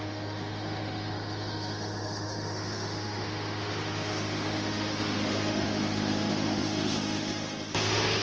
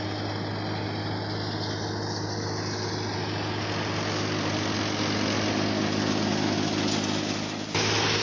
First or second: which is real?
second